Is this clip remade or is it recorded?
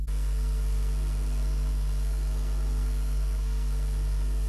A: remade